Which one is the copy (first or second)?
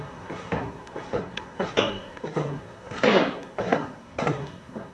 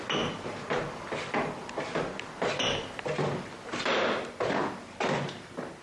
first